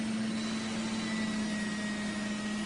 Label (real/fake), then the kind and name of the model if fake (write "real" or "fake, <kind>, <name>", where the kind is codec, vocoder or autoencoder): real